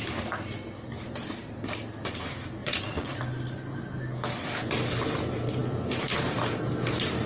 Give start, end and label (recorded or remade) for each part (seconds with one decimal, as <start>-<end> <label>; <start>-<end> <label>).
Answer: 0.0-2.6 recorded; 2.6-3.2 remade; 3.2-7.3 recorded